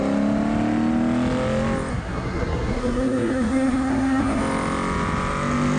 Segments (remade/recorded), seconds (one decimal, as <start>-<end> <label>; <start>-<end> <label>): 0.0-1.9 recorded; 1.9-4.4 remade; 4.4-5.8 recorded